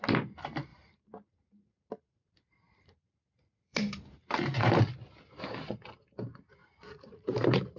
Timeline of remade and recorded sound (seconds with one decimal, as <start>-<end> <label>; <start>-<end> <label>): 0.0-0.7 recorded; 0.7-4.8 remade; 4.8-6.6 recorded; 6.6-7.8 remade

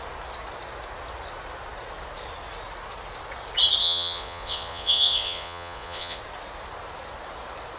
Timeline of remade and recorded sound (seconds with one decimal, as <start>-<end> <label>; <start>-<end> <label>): 0.0-3.8 recorded; 3.8-6.2 remade; 6.2-7.8 recorded

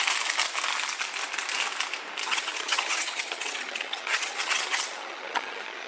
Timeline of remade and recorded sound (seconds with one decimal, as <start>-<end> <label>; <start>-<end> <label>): 0.0-2.2 recorded; 2.2-5.9 remade

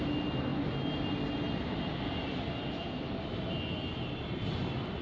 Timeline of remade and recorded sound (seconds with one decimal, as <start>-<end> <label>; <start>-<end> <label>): 0.0-5.0 recorded